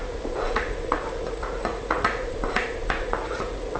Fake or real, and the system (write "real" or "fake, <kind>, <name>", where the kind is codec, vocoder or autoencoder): fake, vocoder, Vocos